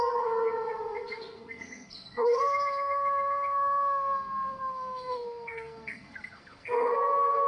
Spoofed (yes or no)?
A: yes